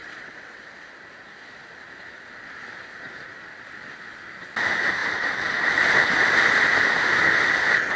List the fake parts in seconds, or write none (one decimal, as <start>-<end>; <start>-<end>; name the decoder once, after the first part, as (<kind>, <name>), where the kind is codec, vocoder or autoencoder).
0.0-0.6 (vocoder, WaveNeXt)